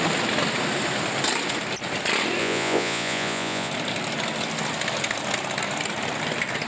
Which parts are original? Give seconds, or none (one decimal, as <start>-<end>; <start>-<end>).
0.0-2.4; 3.7-6.7